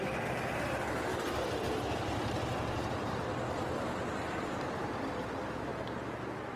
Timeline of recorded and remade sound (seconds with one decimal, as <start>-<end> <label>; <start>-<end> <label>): 0.0-1.1 recorded; 1.1-5.1 remade; 5.1-6.6 recorded